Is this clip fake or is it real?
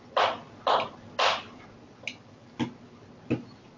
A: real